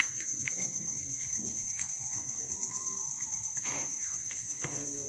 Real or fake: fake